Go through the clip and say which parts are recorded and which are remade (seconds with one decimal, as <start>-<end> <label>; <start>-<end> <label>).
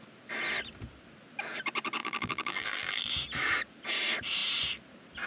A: 0.0-2.0 recorded; 2.0-3.1 remade; 3.1-5.3 recorded